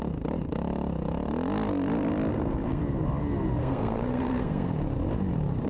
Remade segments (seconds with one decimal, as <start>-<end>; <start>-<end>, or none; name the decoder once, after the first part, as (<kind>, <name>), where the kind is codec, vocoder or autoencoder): 2.3-2.8 (codec, SNAC); 3.6-4.7